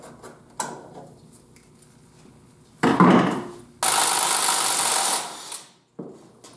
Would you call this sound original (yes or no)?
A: yes